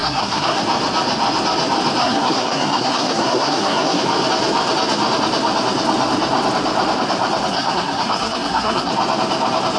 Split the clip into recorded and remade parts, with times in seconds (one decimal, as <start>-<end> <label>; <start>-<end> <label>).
0.0-0.6 remade; 0.6-2.0 recorded; 2.0-4.0 remade; 4.0-7.5 recorded; 7.5-8.9 remade; 8.9-9.8 recorded